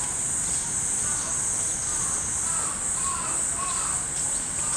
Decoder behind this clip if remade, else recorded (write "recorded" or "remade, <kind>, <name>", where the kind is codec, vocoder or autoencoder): recorded